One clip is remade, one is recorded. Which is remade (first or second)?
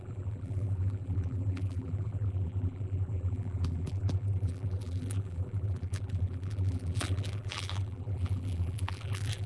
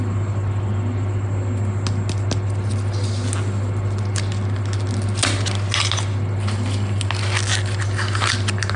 first